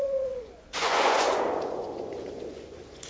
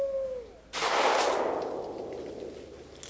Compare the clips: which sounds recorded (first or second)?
second